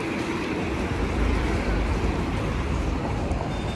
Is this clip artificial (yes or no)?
yes